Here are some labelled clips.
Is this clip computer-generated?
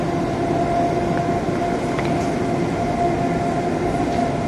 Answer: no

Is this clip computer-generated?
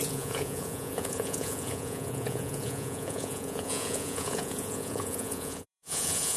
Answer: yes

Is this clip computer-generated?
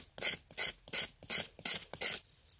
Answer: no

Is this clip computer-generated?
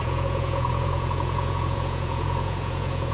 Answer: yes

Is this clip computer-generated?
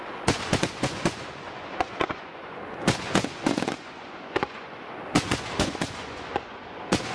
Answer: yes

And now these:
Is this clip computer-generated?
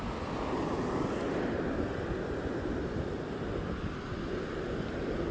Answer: no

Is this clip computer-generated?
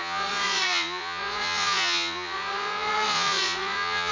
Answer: yes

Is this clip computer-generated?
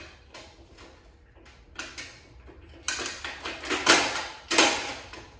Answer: no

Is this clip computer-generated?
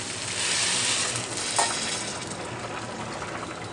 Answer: no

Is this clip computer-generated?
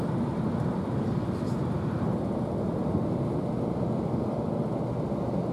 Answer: no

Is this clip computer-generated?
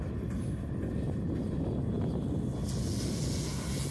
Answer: no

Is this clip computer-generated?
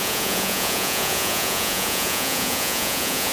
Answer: yes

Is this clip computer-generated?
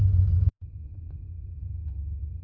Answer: yes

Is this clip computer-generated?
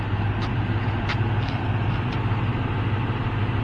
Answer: no